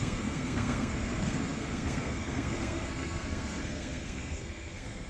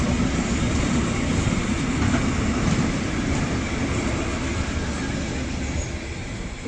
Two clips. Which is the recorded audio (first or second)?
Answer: second